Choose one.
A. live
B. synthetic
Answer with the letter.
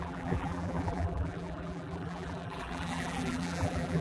B